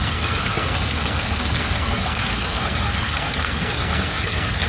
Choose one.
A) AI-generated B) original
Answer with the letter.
A